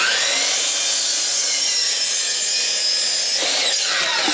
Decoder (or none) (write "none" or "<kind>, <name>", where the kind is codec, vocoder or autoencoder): none